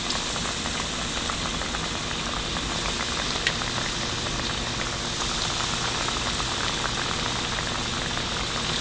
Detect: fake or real real